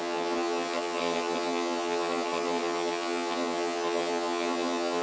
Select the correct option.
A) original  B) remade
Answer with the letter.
B